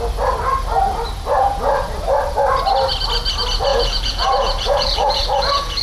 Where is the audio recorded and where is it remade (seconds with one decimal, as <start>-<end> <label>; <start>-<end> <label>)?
0.0-3.7 recorded; 3.7-5.8 remade